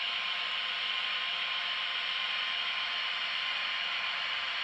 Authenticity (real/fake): real